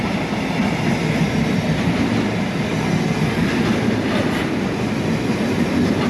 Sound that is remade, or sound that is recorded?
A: recorded